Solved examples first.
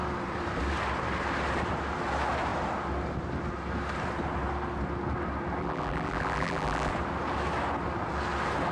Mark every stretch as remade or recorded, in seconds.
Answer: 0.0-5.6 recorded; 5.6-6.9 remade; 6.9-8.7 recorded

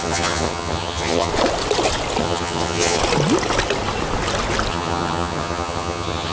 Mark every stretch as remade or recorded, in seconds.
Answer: 0.0-1.3 remade; 1.3-2.2 recorded; 2.2-3.0 remade; 3.0-4.7 recorded; 4.7-6.3 remade